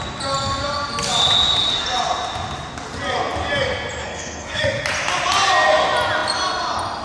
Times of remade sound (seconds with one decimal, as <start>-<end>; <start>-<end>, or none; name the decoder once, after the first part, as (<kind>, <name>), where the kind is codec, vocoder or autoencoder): 4.0-4.6 (codec, SNAC)